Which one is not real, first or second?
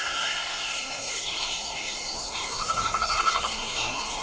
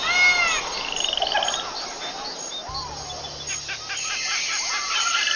first